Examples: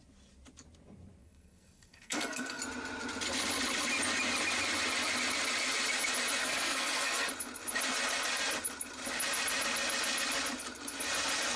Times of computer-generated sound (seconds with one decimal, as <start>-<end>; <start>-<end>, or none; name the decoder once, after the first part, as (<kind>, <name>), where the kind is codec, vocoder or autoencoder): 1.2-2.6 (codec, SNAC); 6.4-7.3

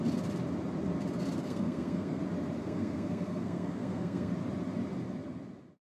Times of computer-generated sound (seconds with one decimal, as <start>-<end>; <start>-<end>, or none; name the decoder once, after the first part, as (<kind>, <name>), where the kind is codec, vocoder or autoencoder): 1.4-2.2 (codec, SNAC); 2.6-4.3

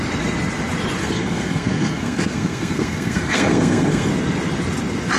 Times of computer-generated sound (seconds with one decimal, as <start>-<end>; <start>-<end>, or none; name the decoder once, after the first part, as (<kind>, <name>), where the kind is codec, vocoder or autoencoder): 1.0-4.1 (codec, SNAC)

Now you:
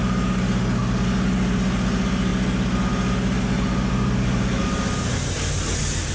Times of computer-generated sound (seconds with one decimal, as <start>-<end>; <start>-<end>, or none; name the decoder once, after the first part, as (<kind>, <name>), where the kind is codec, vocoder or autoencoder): none

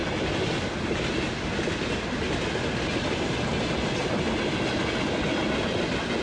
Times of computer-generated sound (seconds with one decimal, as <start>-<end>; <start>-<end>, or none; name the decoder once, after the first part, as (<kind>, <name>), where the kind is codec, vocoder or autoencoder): none